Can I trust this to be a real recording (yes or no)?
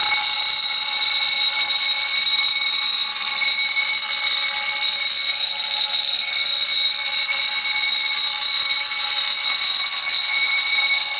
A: no